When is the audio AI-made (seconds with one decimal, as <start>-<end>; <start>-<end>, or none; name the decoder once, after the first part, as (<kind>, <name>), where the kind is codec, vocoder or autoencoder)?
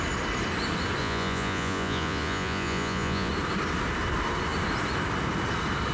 1.0-3.3 (vocoder, Vocos)